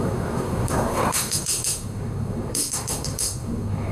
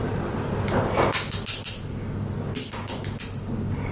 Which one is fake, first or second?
first